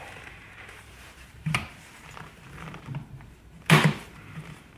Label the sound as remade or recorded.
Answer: remade